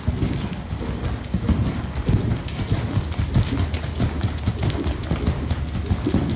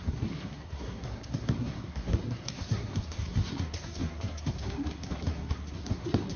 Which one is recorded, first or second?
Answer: first